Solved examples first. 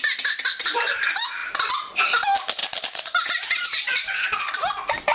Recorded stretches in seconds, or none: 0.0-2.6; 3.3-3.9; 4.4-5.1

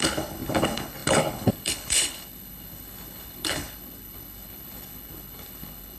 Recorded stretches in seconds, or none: none

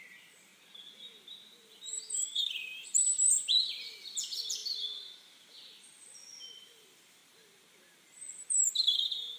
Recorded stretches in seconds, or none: 0.5-1.5; 4.6-6.6; 7.2-8.7

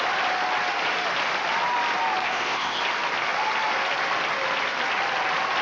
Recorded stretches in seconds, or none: 0.0-2.2; 2.8-5.6

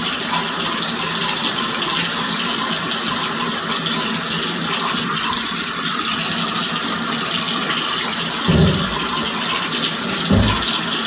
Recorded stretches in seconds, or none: 0.0-11.1

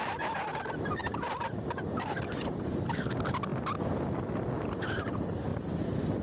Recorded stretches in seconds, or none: 0.0-1.0; 3.1-5.5